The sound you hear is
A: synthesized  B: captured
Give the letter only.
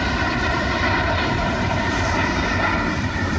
A